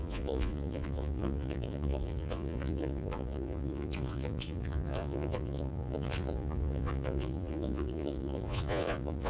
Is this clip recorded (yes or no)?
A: no